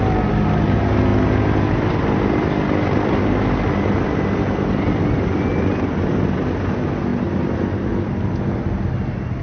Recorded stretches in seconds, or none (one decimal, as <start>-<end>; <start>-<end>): 0.0-7.1; 8.3-9.4